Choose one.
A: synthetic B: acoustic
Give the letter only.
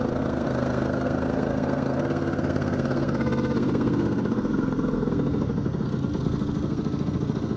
A